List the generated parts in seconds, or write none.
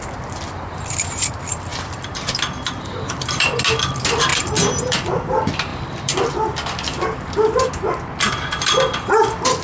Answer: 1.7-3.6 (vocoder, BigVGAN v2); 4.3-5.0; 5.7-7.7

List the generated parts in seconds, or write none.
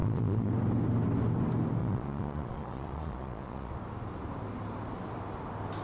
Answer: 0.0-0.5 (vocoder, Vocos); 1.8-3.7